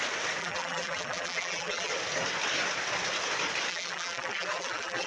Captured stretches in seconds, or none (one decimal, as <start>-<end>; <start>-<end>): 0.0-0.4; 1.9-3.7